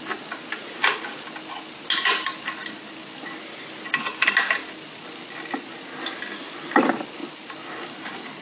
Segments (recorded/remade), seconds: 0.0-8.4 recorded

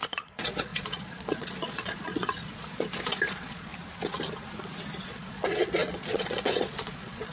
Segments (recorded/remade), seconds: 0.0-3.7 remade; 3.7-5.0 recorded; 5.0-7.3 remade

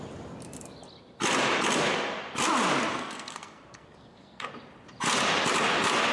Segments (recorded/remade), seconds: 0.0-2.9 recorded; 2.9-4.5 remade; 4.5-6.1 recorded

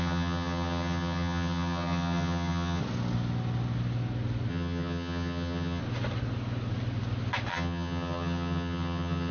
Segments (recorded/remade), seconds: 0.0-2.8 remade; 2.8-4.5 recorded; 4.5-5.8 remade; 5.8-7.5 recorded; 7.5-9.3 remade

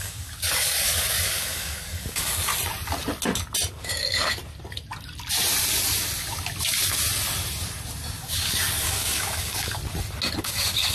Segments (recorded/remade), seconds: 0.0-2.5 remade; 2.5-3.7 recorded; 3.7-4.4 remade; 4.4-8.2 recorded; 8.2-9.8 remade; 9.8-10.4 recorded; 10.4-10.9 remade

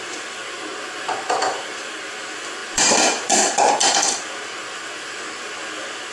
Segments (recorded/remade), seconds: 0.0-0.4 remade; 0.4-2.2 recorded; 2.2-6.1 remade

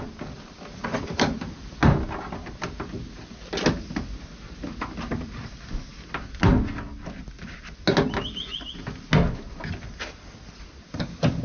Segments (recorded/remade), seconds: 0.0-0.8 recorded; 0.8-1.7 remade; 1.7-11.4 recorded